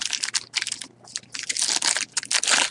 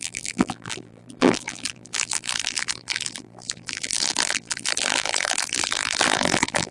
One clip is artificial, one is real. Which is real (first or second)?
first